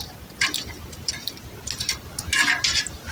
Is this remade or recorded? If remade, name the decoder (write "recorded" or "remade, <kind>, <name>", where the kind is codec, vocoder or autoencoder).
remade, vocoder, BigVGAN v2